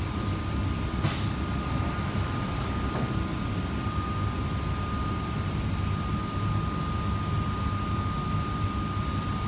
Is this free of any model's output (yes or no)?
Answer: yes